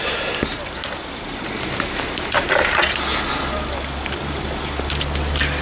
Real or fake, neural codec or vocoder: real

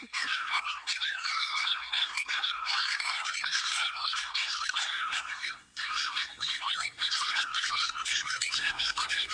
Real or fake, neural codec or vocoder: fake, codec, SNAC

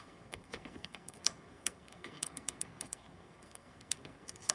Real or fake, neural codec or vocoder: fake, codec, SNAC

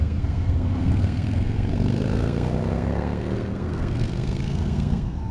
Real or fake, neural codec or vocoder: fake, codec, SNAC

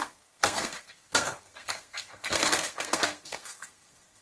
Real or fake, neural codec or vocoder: fake, codec, SNAC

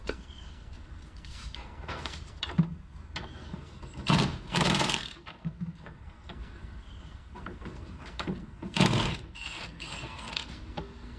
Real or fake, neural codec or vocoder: fake, codec, SNAC